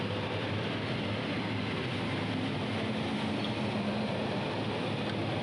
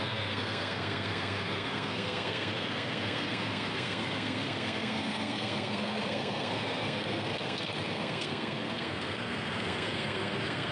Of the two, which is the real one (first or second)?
first